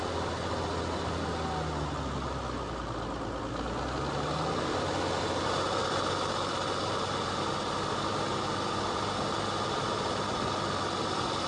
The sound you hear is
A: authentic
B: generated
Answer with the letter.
A